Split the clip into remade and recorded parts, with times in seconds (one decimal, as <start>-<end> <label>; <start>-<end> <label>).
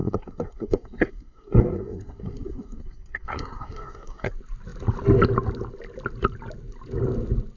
0.0-4.3 remade; 4.3-7.6 recorded